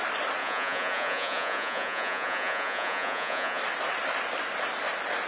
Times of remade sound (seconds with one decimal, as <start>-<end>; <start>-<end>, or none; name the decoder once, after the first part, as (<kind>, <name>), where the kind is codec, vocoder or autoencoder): 0.4-3.6 (vocoder, Vocos)